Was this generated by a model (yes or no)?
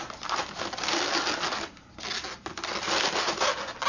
no